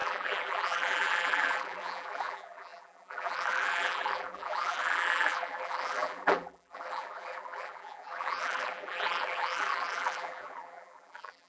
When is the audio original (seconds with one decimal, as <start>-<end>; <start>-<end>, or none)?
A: none